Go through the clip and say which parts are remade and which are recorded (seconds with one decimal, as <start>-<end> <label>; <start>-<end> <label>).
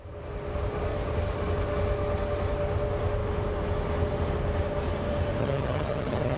0.0-5.4 recorded; 5.4-6.4 remade